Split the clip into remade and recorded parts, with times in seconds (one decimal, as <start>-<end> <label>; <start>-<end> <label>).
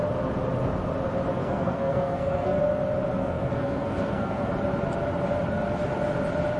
0.0-1.4 recorded; 1.4-2.6 remade; 2.6-3.2 recorded; 3.2-4.5 remade; 4.5-6.6 recorded